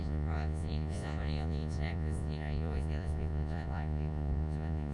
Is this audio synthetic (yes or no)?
yes